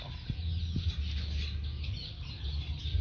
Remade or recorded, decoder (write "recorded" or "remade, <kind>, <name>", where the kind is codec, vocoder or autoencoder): recorded